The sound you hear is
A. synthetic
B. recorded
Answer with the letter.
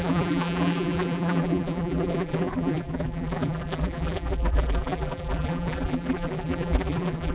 A